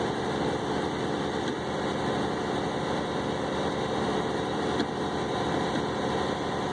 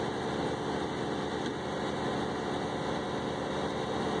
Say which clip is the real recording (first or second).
second